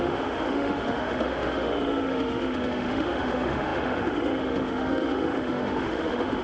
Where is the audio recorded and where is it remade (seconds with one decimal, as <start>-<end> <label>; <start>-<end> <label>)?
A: 0.0-6.4 remade